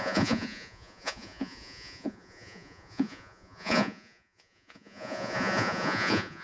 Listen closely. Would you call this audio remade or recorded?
remade